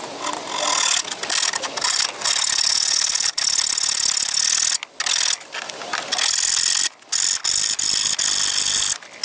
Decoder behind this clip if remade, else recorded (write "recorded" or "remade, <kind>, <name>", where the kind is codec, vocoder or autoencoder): recorded